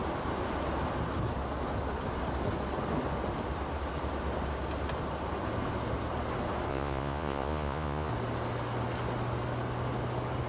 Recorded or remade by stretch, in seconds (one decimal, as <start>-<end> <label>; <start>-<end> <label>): 0.0-6.7 recorded; 6.7-8.1 remade; 8.1-10.5 recorded